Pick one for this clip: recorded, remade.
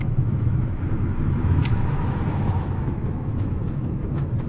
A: remade